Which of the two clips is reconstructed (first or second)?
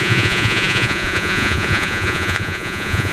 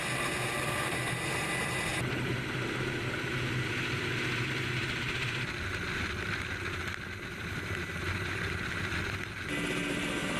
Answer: first